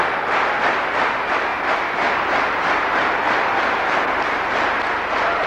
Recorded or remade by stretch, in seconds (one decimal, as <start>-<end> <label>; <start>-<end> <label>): 0.0-5.5 recorded